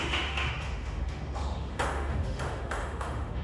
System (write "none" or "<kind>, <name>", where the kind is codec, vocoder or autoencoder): autoencoder, DAC-VAE